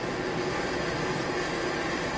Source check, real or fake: real